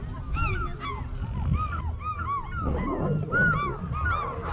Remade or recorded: recorded